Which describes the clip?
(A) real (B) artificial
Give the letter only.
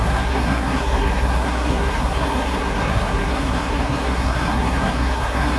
B